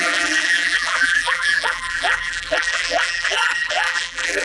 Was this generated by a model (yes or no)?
yes